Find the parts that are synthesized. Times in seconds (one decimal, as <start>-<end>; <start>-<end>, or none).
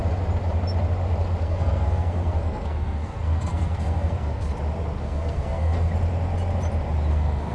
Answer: 1.4-4.5; 5.0-5.9; 7.1-7.5